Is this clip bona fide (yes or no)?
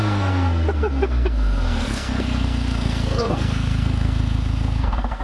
no